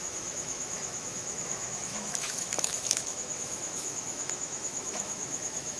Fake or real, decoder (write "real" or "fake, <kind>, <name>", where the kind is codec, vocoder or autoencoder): fake, autoencoder, DAC-VAE